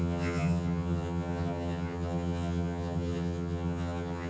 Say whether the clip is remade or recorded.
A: remade